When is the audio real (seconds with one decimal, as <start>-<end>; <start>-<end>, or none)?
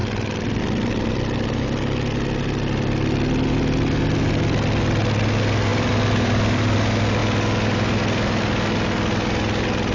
0.0-5.7; 6.8-9.9